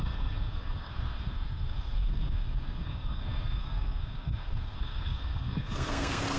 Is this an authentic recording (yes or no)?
no